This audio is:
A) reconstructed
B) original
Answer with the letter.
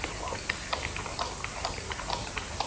A